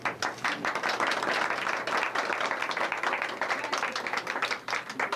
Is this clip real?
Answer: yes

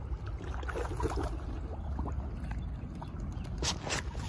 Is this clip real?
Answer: yes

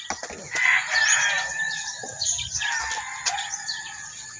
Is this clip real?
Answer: yes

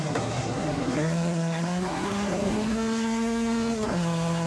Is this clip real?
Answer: no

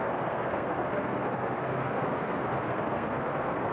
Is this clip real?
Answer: no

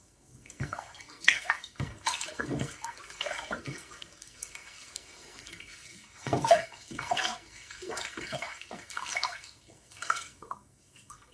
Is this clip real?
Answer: no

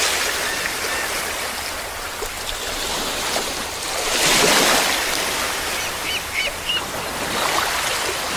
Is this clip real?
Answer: yes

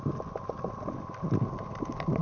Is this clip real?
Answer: yes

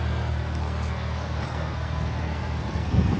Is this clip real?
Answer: no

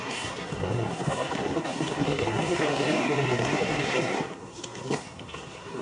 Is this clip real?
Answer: no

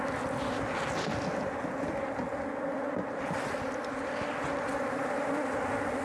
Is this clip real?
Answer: yes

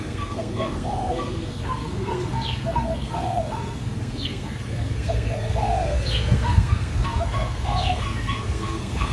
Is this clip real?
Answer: no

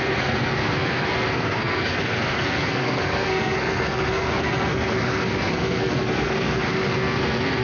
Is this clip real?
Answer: no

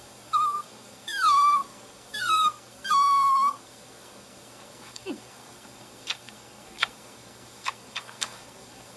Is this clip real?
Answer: no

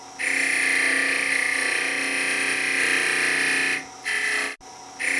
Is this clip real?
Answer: yes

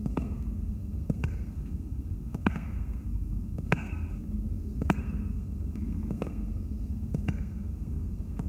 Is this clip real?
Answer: no